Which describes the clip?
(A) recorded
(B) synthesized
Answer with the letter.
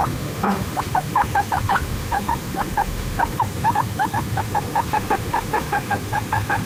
B